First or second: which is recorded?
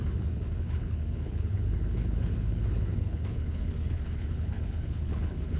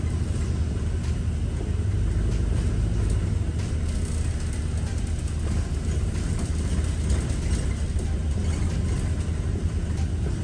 second